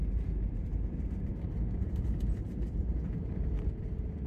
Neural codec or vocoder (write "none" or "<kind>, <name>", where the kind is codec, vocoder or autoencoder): vocoder, BigVGAN v2